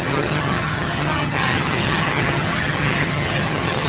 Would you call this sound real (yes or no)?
no